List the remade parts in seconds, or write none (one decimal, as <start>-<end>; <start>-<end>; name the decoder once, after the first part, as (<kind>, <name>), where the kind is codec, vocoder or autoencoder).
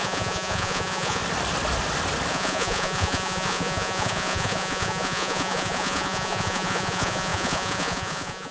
0.0-1.2 (vocoder, Vocos); 2.3-8.5